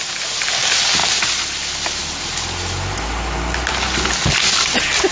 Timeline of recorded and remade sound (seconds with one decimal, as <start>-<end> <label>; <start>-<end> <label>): 0.0-5.1 recorded